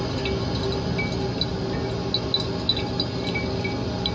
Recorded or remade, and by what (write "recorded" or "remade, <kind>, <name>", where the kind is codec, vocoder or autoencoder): recorded